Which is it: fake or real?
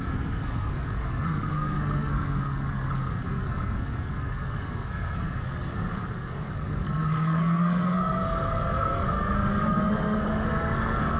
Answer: fake